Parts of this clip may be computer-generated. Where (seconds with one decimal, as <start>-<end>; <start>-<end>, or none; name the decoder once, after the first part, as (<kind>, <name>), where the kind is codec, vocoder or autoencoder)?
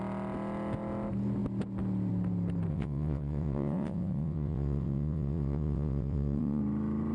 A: 2.7-6.6 (vocoder, WaveNeXt)